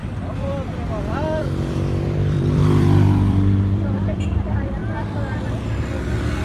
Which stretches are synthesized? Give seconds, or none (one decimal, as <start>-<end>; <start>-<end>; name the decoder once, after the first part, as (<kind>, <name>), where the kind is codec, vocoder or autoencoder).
1.0-4.8 (vocoder, BigVGAN v2)